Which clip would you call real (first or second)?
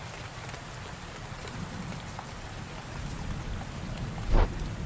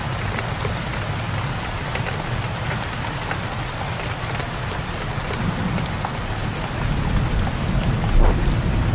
second